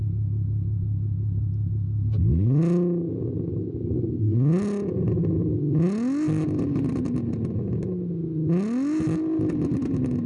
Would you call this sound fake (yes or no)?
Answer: no